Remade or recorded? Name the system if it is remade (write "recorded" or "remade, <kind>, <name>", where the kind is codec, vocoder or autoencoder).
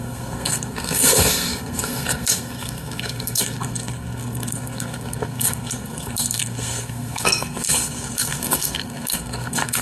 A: remade, codec, SNAC